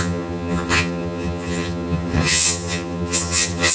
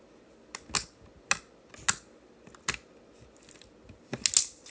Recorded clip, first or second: second